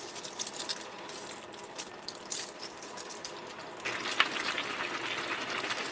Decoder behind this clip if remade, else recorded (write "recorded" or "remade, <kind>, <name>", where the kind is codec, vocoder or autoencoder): recorded